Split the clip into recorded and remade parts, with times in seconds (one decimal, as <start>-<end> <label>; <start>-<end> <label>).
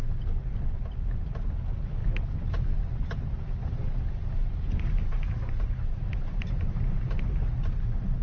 0.0-8.2 recorded